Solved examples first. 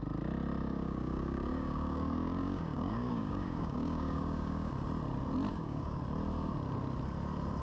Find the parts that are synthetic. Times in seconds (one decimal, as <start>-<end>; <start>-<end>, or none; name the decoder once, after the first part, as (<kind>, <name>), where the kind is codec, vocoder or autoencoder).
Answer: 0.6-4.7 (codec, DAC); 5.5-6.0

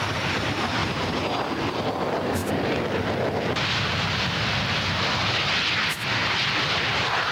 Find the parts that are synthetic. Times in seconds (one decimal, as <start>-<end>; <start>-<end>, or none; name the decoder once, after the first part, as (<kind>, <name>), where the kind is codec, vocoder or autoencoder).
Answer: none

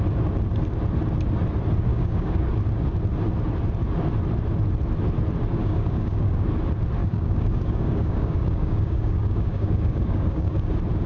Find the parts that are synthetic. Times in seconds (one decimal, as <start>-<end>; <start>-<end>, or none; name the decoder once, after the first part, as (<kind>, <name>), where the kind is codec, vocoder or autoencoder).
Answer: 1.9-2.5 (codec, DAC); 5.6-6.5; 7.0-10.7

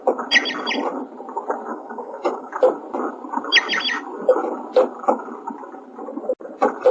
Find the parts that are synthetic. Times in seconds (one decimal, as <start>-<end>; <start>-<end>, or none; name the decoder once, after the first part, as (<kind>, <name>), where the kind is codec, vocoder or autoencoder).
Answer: 1.7-2.5 (codec, DAC)

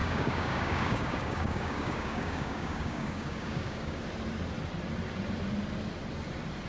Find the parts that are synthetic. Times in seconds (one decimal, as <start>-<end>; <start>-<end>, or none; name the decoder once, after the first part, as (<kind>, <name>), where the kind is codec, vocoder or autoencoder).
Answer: 0.0-4.0 (codec, DAC)

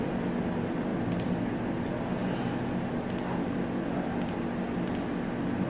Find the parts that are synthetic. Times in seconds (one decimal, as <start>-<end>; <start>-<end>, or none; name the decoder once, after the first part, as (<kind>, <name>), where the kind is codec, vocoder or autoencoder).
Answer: none

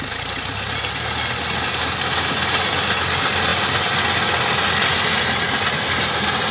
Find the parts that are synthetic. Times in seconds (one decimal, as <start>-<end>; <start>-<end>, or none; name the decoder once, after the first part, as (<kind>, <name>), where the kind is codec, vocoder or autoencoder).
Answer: none

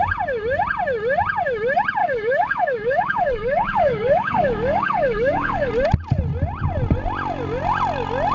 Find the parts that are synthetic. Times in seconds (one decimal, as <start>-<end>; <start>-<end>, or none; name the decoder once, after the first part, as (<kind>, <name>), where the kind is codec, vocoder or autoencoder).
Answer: 2.0-5.7 (codec, DAC)